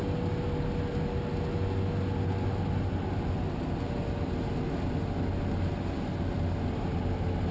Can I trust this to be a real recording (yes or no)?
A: yes